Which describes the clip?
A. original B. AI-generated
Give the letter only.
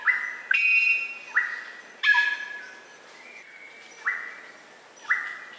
A